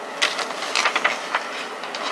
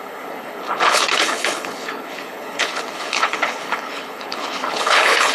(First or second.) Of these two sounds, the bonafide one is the first